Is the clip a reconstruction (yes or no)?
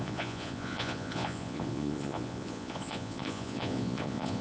yes